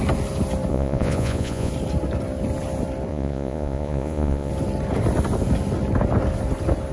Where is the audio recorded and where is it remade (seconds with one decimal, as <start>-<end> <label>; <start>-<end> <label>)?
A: 0.0-0.7 recorded; 0.7-1.7 remade; 1.7-3.1 recorded; 3.1-4.5 remade; 4.5-6.9 recorded